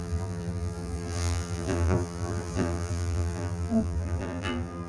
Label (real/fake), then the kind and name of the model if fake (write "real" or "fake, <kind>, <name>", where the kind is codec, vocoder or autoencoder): fake, vocoder, BigVGAN v2